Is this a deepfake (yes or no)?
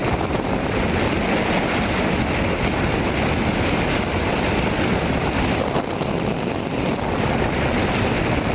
no